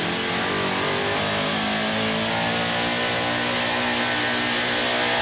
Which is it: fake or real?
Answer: real